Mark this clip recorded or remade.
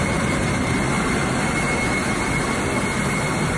recorded